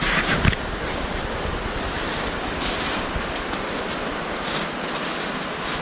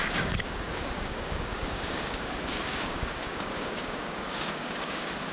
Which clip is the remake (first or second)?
second